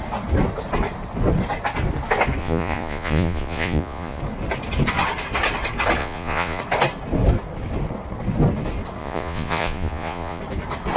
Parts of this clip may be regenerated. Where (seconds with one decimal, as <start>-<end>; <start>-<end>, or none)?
2.4-4.2; 6.0-6.6; 9.0-10.4